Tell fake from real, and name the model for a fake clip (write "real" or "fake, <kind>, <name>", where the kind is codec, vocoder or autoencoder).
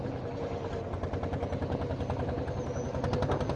real